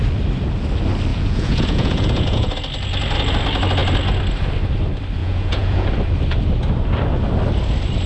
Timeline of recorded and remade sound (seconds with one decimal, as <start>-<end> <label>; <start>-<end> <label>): 0.0-1.1 recorded; 1.1-2.5 remade; 2.5-5.2 recorded; 5.2-5.9 remade; 5.9-8.1 recorded